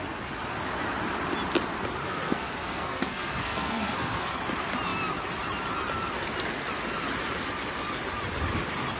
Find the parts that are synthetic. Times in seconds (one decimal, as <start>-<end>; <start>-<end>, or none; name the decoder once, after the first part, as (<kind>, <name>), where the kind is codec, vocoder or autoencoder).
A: 2.0-4.4 (codec, SNAC)